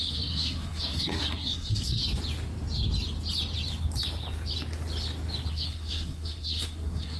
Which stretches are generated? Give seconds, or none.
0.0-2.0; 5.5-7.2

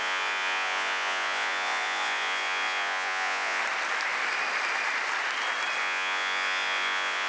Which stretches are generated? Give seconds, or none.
0.0-3.6; 5.8-7.3

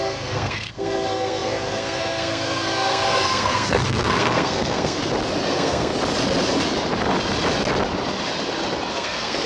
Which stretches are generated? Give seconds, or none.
0.0-5.0; 5.5-5.9; 8.9-9.5

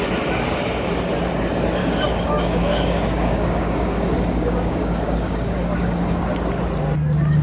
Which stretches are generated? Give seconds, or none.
1.8-6.2

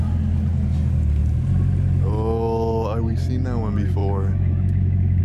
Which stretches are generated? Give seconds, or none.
4.0-5.2

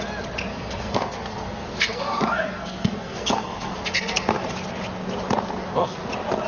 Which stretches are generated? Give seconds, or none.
0.5-4.4; 5.6-6.1

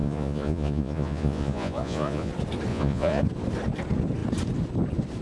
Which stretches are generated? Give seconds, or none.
0.0-2.3; 2.7-3.2